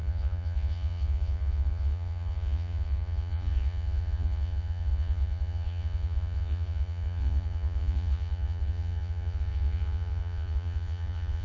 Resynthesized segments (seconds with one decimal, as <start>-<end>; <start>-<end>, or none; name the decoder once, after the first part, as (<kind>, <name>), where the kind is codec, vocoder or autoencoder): 0.0-11.4 (vocoder, Vocos)